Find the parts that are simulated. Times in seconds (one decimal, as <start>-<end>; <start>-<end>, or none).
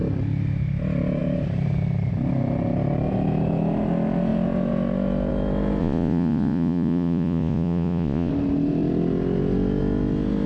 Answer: 5.8-8.3